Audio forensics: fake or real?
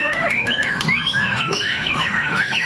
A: fake